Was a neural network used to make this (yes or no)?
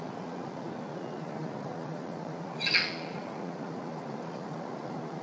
yes